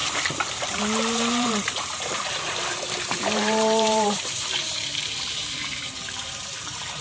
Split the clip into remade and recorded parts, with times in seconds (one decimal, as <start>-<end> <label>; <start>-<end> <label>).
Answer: 0.0-7.0 remade